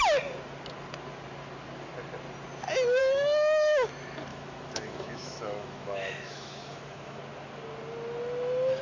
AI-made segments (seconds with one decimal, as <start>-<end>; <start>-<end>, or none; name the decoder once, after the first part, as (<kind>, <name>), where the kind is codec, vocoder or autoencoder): 3.0-3.9 (autoencoder, DAC-VAE); 4.3-7.2